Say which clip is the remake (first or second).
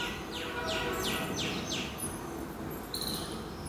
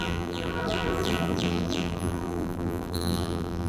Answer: second